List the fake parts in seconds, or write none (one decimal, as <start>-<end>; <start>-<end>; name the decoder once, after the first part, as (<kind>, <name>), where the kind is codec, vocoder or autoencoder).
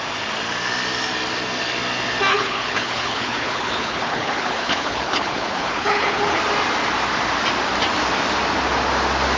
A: 2.3-6.4 (codec, HILCodec)